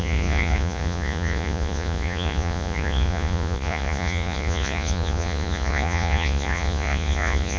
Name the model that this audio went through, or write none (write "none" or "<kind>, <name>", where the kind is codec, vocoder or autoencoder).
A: vocoder, Vocos